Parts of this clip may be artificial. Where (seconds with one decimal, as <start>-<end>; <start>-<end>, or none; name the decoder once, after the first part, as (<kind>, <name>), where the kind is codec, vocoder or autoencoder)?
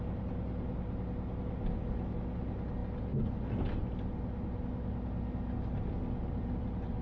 none